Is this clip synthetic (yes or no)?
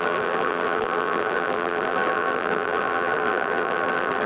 yes